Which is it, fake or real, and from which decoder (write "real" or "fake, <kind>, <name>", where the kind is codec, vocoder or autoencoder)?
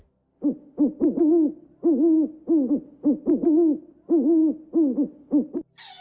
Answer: real